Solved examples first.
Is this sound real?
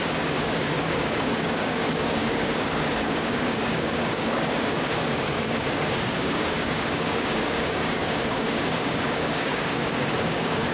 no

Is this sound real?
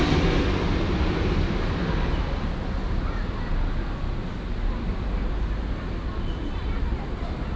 yes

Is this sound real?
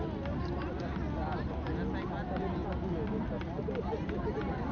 yes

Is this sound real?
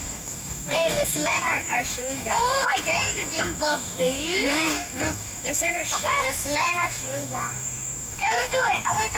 no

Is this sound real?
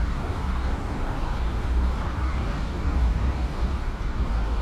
no